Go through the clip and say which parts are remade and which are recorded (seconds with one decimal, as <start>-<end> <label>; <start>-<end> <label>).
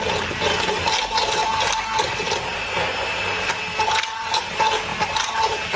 0.0-5.8 recorded